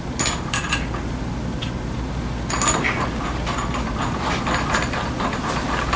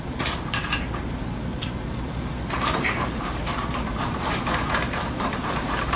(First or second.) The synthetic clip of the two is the second